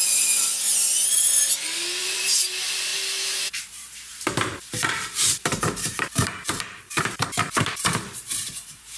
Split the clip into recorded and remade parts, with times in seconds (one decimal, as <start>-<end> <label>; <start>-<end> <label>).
0.0-0.5 remade; 0.5-2.0 recorded; 2.0-9.0 remade